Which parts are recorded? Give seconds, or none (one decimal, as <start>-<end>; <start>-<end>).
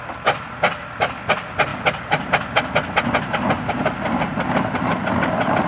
0.0-5.7